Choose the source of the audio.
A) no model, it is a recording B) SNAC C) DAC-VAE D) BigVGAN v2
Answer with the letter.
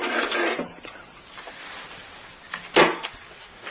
A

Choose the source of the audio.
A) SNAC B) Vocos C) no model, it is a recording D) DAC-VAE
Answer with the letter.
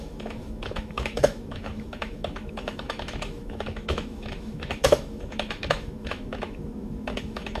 D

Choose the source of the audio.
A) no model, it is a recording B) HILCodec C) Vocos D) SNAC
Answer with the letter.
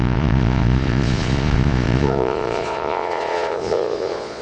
C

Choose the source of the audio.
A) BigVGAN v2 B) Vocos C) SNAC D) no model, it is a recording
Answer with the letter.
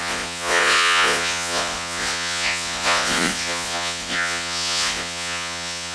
B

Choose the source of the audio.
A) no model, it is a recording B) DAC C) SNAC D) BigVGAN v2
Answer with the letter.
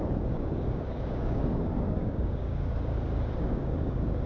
B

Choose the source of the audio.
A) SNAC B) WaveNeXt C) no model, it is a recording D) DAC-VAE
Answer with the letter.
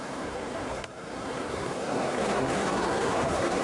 A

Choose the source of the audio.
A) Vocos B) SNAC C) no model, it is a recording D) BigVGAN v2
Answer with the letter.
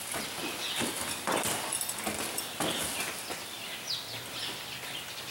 C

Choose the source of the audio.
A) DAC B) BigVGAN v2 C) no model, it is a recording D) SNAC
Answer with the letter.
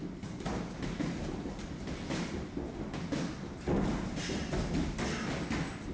C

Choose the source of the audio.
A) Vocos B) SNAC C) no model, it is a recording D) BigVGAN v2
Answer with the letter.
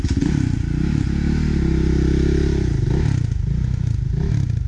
C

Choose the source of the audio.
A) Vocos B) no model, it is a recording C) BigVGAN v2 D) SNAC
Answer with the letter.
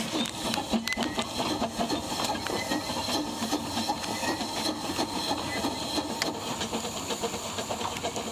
B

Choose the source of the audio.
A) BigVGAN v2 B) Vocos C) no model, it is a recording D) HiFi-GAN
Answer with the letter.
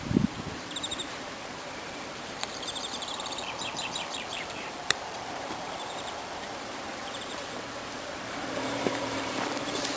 A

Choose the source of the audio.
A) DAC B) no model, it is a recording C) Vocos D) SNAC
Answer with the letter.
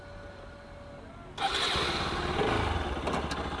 B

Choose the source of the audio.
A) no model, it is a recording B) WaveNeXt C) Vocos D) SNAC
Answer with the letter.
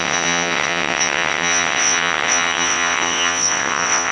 B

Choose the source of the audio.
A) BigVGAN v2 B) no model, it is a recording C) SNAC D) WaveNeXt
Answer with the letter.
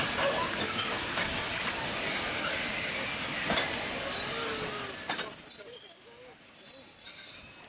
B